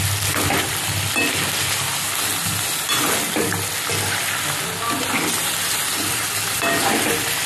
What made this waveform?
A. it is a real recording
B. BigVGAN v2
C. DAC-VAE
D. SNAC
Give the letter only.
A